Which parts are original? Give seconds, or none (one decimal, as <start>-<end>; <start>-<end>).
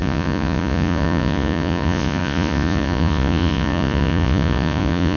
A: none